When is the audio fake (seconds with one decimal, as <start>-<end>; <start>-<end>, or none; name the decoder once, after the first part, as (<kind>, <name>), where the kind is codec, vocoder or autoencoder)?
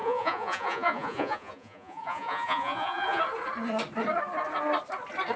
0.0-3.2 (vocoder, Vocos)